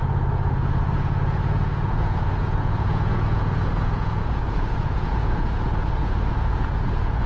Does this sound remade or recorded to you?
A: remade